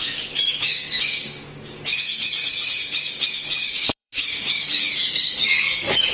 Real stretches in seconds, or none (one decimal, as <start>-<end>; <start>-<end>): none